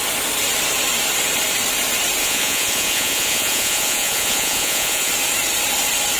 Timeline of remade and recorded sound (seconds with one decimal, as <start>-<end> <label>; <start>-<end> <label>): 0.0-2.2 recorded; 2.2-5.1 remade; 5.1-6.2 recorded

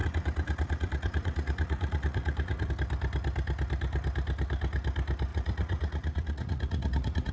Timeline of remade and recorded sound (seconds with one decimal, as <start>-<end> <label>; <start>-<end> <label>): 0.0-2.7 remade; 2.7-5.3 recorded; 5.3-7.3 remade